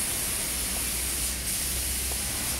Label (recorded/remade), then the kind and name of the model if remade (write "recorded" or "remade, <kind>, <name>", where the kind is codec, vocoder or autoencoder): recorded